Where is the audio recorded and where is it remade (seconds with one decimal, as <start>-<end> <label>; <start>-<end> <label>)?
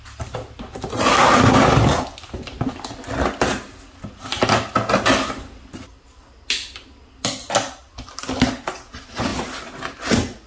0.0-10.5 recorded